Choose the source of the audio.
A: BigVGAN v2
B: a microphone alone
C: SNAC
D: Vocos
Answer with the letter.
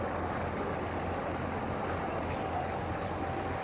B